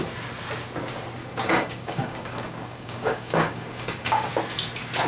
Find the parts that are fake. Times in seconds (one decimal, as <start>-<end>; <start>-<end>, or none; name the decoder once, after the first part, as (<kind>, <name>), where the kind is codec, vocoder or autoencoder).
1.2-4.3 (codec, DAC)